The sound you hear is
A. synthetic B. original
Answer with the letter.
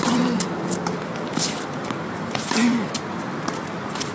A